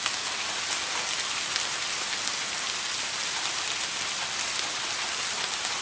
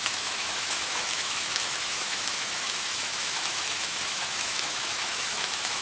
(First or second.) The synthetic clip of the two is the second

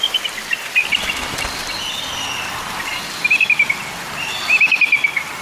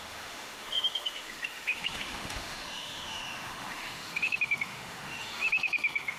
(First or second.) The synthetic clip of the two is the second